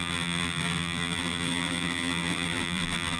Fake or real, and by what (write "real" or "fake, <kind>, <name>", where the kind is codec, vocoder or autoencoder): fake, vocoder, BigVGAN v2